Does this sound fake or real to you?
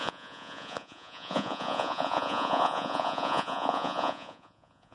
fake